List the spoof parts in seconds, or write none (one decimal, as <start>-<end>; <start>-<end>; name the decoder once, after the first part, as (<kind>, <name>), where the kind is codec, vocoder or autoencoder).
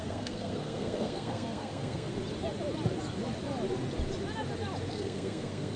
0.0-2.1 (codec, SNAC); 4.9-5.8